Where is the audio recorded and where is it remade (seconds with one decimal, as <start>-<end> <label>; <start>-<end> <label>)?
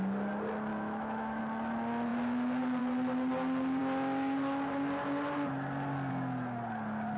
0.0-0.7 recorded; 0.7-1.4 remade; 1.4-7.2 recorded